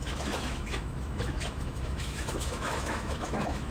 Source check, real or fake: fake